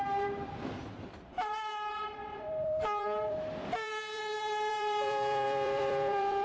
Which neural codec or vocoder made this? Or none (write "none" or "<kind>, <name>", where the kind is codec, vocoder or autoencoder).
vocoder, BigVGAN v2